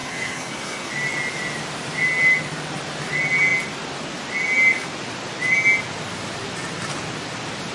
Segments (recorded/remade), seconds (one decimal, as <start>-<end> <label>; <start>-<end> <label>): 0.0-0.9 remade; 0.9-7.7 recorded